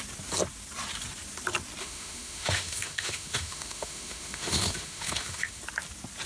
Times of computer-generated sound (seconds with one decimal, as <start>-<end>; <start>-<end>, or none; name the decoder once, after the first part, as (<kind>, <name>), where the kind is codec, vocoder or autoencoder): 1.8-5.6 (autoencoder, DAC-VAE)